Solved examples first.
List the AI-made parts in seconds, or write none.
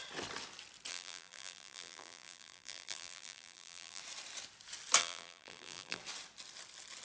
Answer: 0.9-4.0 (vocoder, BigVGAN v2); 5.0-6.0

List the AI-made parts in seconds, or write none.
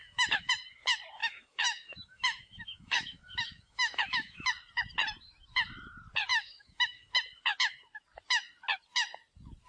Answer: 0.0-0.5 (autoencoder, DAC-VAE); 1.2-4.5; 6.3-7.1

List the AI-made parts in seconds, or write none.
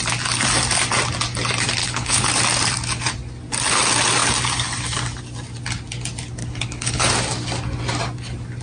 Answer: 1.8-2.3 (codec, HILCodec); 6.4-7.1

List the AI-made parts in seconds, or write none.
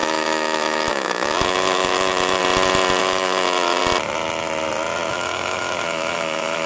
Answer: 0.0-2.4 (autoencoder, DAC-VAE); 3.0-3.8; 5.1-6.7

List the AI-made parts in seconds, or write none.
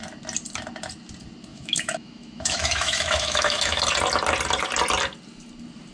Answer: 1.5-3.8 (autoencoder, DAC-VAE)